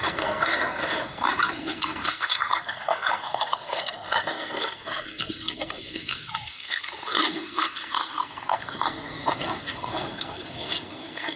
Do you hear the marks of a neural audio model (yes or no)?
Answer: yes